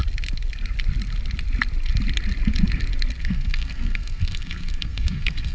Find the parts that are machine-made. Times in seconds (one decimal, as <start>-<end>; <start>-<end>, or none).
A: 3.2-5.5